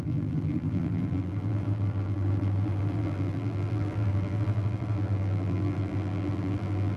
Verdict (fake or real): fake